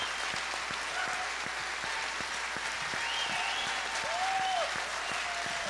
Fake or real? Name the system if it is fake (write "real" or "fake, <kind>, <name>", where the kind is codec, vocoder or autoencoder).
real